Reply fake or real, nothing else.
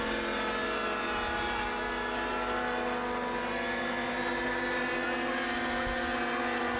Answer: real